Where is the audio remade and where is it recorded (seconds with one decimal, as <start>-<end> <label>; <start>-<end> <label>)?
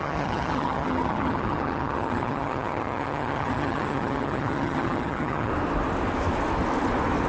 0.0-5.5 remade; 5.5-7.3 recorded